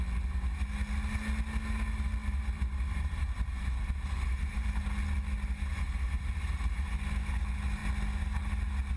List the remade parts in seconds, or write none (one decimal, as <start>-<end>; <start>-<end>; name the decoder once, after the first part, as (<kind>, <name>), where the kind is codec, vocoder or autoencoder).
2.2-4.8 (vocoder, BigVGAN v2); 5.7-6.9